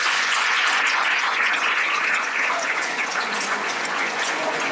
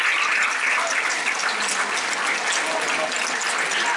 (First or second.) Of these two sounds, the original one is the second